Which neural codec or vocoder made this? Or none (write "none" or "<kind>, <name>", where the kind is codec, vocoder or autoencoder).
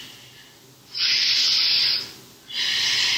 none